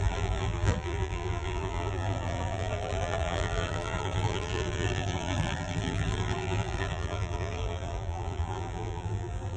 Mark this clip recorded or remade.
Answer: remade